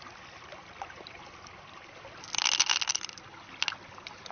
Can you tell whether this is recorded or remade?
recorded